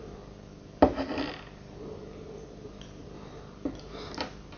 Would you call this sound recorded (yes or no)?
yes